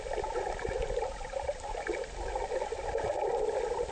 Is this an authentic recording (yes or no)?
yes